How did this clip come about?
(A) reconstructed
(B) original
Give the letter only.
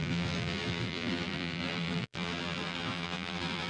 A